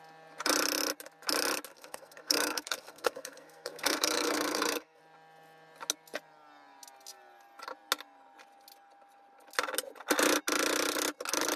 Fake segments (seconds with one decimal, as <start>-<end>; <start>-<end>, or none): 1.7-5.0